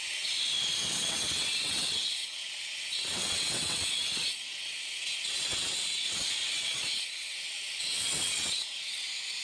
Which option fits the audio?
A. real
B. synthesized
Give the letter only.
B